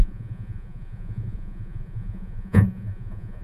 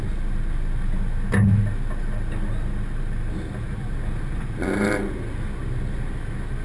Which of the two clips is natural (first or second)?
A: second